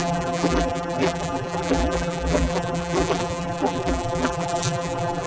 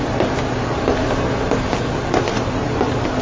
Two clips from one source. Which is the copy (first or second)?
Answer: first